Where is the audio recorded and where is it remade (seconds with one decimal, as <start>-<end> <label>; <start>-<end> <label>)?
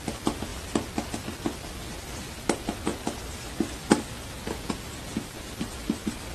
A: 0.0-6.3 recorded